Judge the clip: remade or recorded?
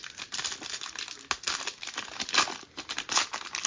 recorded